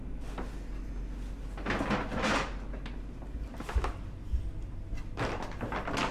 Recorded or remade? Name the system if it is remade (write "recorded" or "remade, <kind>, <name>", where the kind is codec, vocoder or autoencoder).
recorded